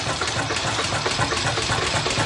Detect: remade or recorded recorded